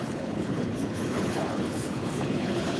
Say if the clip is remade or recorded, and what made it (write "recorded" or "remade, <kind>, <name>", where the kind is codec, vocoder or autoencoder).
remade, codec, HILCodec